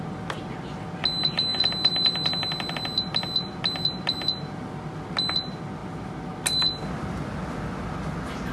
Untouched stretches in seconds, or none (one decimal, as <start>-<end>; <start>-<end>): 0.0-8.5